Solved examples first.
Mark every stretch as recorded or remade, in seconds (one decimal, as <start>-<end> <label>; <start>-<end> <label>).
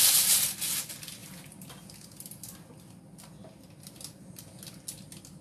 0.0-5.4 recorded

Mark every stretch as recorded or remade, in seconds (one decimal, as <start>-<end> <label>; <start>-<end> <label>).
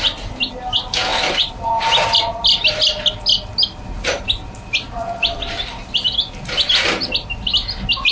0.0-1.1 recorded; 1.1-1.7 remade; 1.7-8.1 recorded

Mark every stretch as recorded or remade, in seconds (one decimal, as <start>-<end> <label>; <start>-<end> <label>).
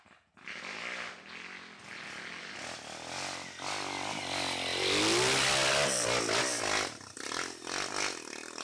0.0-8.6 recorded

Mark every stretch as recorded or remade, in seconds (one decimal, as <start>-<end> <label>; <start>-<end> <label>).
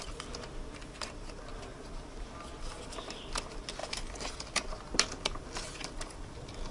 0.0-6.7 remade